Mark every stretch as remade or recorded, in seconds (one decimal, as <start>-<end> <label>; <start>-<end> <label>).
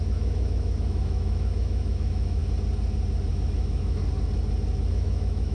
0.0-2.4 remade; 2.4-3.3 recorded; 3.3-4.0 remade; 4.0-4.9 recorded; 4.9-5.5 remade